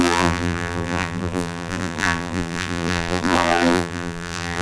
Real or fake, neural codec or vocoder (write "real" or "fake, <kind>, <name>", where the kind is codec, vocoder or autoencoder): fake, vocoder, BigVGAN v2